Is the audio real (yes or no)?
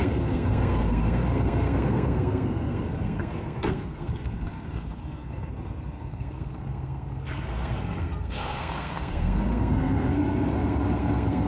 no